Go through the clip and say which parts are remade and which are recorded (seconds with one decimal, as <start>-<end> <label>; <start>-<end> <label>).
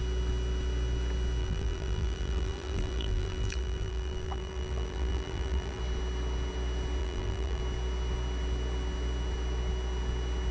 0.0-1.4 recorded; 1.4-5.8 remade; 5.8-7.0 recorded; 7.0-7.6 remade; 7.6-10.5 recorded